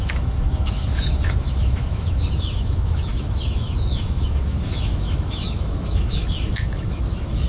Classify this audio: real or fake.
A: fake